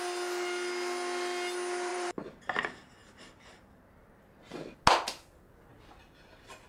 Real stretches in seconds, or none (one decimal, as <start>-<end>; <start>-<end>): 0.0-1.9; 4.5-6.7